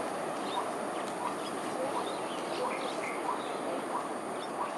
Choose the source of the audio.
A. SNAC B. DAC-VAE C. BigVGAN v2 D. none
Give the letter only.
D